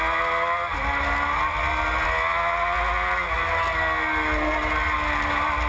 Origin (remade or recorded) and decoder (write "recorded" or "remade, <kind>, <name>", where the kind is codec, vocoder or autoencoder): recorded